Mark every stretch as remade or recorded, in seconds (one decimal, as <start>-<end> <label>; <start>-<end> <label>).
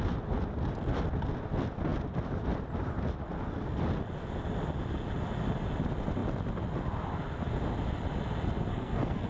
0.0-8.7 recorded; 8.7-9.3 remade